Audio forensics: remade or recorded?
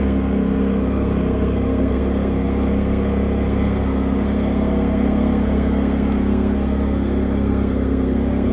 remade